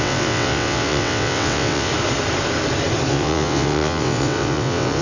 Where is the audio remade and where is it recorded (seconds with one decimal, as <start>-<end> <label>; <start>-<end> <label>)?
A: 0.0-1.9 remade; 1.9-3.1 recorded; 3.1-5.0 remade